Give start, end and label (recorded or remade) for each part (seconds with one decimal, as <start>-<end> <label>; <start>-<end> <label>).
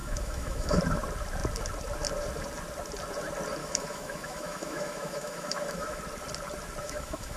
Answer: 0.0-0.8 remade; 0.8-3.6 recorded; 3.6-6.0 remade; 6.0-6.8 recorded; 6.8-7.4 remade